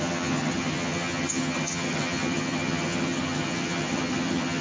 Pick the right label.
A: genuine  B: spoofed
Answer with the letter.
B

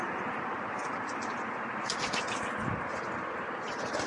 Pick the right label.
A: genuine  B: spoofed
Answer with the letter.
A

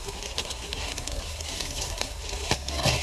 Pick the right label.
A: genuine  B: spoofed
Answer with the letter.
B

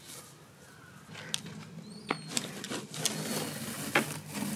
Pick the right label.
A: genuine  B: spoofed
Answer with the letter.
A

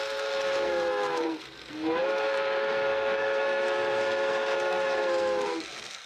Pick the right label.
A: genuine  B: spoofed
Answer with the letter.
B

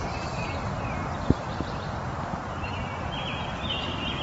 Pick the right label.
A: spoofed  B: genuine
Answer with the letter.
B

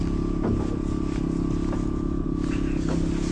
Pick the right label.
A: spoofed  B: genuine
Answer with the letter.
B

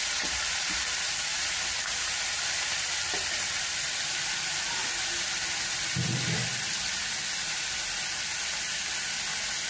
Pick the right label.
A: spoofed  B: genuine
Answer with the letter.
B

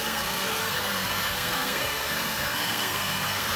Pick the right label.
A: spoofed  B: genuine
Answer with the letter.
A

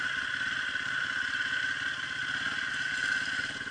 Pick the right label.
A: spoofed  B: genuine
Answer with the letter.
B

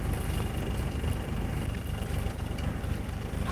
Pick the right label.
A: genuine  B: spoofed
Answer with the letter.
A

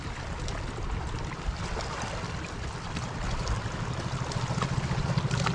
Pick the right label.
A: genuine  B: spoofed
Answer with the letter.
A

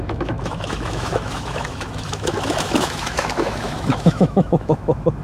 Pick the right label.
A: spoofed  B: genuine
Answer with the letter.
A